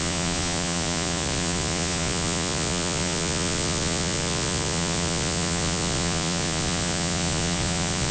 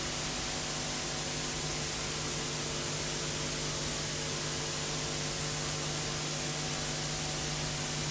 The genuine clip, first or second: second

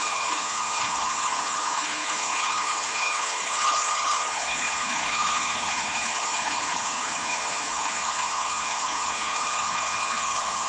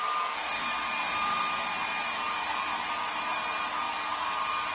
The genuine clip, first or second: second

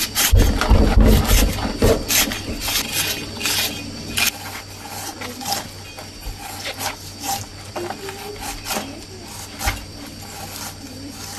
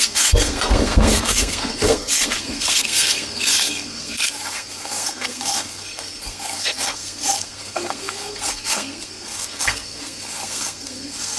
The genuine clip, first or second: first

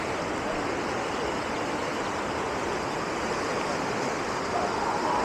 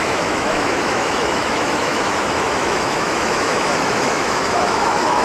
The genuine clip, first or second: first